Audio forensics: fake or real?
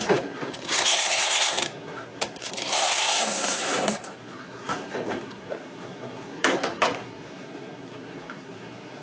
fake